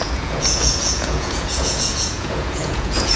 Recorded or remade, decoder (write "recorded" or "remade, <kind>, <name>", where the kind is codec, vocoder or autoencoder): remade, vocoder, Vocos